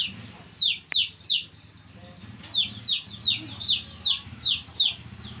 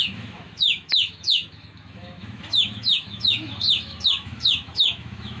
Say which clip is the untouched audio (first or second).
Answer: first